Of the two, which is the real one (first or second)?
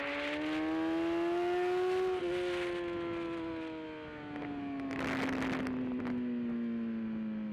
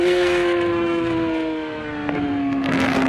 first